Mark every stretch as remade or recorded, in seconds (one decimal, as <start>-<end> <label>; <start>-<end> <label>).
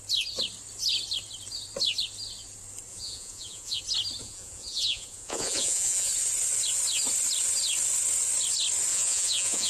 0.0-2.9 recorded; 2.9-3.8 remade; 3.8-4.2 recorded; 4.2-6.1 remade; 6.1-8.9 recorded; 8.9-9.7 remade